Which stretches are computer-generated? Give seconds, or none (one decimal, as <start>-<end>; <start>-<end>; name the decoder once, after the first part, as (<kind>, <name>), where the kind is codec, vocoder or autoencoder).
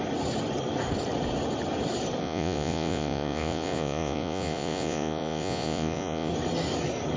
2.2-6.3 (vocoder, Vocos)